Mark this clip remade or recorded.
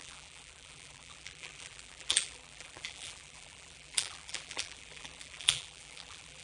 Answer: remade